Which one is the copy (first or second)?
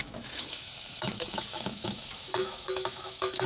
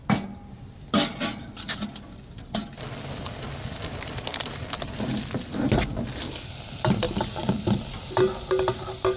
first